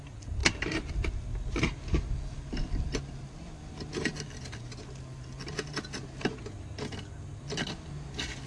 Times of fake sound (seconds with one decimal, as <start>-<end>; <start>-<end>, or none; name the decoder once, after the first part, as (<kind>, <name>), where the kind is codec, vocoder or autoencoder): none